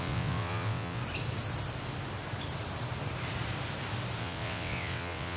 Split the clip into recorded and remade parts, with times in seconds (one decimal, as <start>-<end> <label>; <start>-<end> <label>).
0.0-1.0 remade; 1.0-4.2 recorded; 4.2-5.4 remade